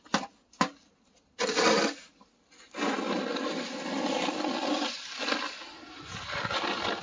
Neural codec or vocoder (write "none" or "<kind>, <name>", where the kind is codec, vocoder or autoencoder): none